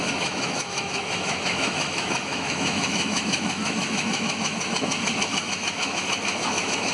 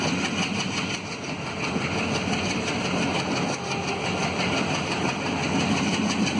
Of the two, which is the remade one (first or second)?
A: first